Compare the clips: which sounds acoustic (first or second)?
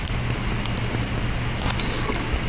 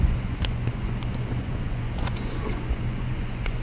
first